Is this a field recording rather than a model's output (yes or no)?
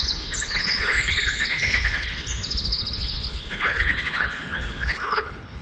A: no